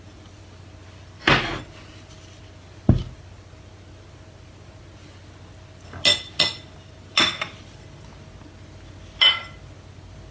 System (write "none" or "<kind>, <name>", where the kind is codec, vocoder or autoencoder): none